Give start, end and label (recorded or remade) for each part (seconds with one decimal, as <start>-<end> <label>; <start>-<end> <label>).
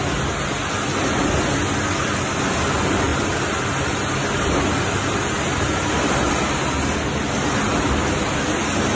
0.0-2.0 recorded; 2.0-2.6 remade; 2.6-8.9 recorded